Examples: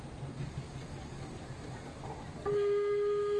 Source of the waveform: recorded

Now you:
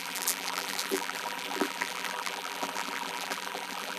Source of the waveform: remade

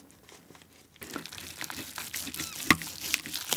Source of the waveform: recorded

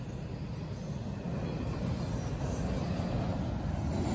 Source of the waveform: recorded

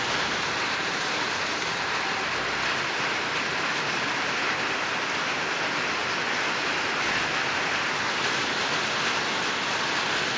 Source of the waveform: recorded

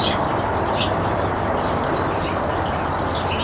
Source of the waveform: remade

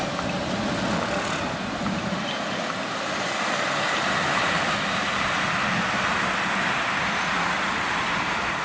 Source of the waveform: recorded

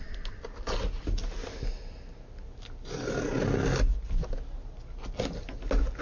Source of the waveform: recorded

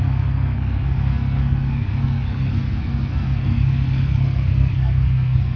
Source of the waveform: remade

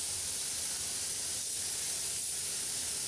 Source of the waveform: recorded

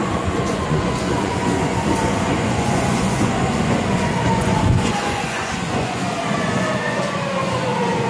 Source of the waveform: remade